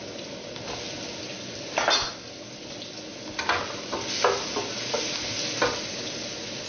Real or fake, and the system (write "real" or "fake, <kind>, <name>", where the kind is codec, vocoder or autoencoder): real